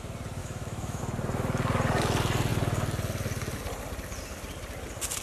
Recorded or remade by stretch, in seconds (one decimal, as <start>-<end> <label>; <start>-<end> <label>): 0.0-0.4 recorded; 0.4-1.0 remade; 1.0-5.2 recorded